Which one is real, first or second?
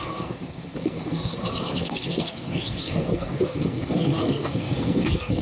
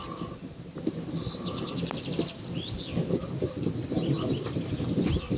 second